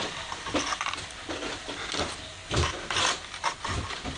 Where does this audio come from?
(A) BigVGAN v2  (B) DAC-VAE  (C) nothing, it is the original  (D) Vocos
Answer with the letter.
A